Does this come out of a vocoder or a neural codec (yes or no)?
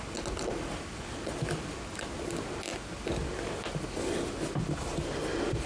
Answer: no